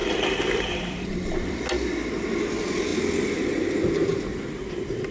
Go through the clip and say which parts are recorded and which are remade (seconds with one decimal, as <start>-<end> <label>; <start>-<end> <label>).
0.0-1.6 remade; 1.6-5.1 recorded